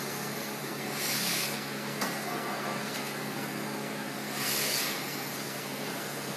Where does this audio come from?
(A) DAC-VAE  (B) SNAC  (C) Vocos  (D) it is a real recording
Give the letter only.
B